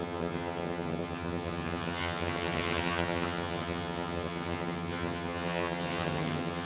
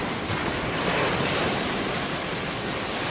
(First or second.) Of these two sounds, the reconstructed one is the first